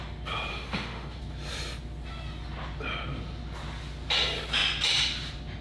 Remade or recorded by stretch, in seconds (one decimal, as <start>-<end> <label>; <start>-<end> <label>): 0.0-0.5 recorded; 0.5-1.2 remade; 1.2-5.6 recorded

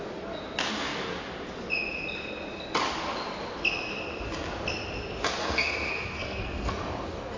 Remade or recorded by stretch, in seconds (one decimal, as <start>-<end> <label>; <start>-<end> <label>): 0.0-5.4 recorded; 5.4-6.7 remade; 6.7-7.4 recorded

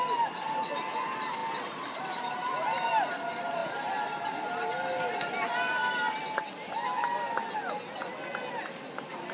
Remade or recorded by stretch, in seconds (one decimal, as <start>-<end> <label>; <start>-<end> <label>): 0.0-9.3 recorded

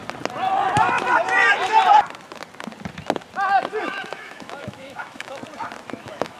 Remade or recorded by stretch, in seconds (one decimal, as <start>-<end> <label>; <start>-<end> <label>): 0.0-3.8 recorded; 3.8-5.4 remade; 5.4-6.0 recorded; 6.0-6.4 remade

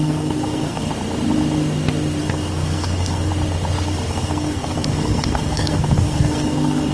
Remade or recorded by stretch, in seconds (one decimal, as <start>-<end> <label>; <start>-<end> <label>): 0.0-0.9 remade; 0.9-2.2 recorded; 2.2-3.3 remade; 3.3-4.1 recorded; 4.1-6.9 remade